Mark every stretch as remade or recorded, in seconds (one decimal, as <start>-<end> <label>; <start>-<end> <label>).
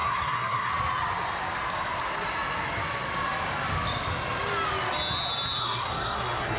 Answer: 0.0-0.7 remade; 0.7-5.6 recorded; 5.6-6.6 remade